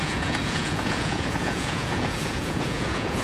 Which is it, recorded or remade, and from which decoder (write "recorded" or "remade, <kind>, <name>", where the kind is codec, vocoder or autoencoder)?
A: remade, vocoder, Vocos